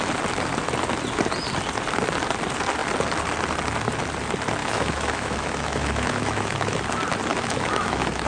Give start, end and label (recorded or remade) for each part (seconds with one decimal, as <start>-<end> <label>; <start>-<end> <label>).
0.0-4.6 recorded; 4.6-6.8 remade; 6.8-7.3 recorded; 7.3-8.3 remade